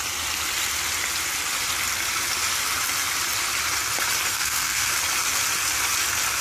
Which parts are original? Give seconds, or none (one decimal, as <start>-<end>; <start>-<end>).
0.0-4.3; 4.9-6.4